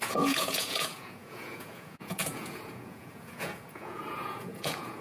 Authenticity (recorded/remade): remade